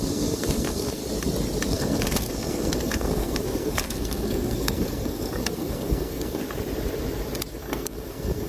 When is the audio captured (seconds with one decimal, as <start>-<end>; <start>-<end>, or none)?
1.0-1.7; 6.4-7.5